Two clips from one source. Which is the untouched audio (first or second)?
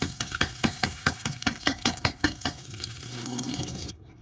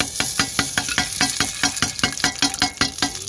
second